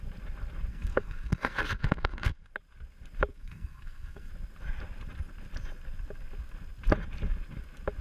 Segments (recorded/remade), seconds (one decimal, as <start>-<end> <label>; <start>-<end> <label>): 0.0-0.7 recorded; 0.7-2.5 remade; 2.5-3.3 recorded; 3.3-4.3 remade; 4.3-8.0 recorded